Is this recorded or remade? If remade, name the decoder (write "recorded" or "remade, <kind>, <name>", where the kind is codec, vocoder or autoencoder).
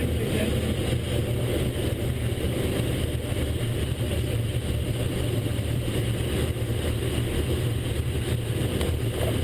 recorded